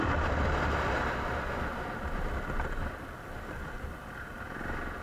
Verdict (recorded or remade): recorded